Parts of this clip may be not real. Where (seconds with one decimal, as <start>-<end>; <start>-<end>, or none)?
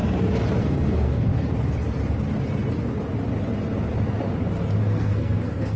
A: 0.6-1.3; 4.8-5.8